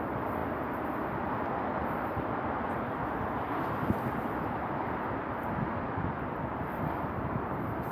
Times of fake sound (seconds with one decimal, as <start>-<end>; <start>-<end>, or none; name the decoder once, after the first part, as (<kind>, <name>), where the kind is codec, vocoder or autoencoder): none